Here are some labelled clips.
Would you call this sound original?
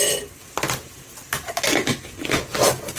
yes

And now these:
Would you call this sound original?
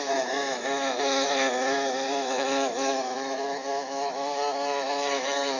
no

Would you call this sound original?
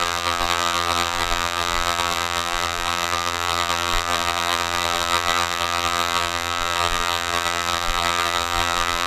no